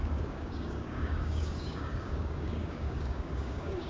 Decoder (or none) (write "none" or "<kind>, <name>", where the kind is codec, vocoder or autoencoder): codec, DAC